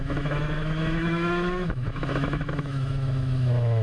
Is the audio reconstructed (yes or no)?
yes